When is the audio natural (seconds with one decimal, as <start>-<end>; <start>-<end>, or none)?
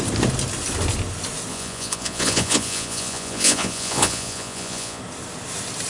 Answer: 0.0-1.5; 5.0-5.9